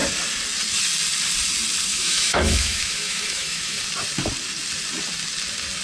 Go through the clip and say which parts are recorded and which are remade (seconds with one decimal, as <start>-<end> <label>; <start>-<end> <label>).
0.0-1.9 recorded; 1.9-3.8 remade; 3.8-5.8 recorded